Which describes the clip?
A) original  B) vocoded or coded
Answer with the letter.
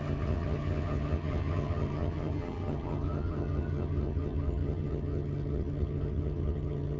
B